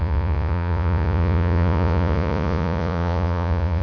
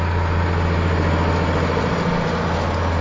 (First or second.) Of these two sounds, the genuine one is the second